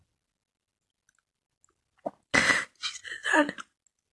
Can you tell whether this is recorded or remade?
recorded